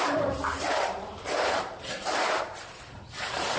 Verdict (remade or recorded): remade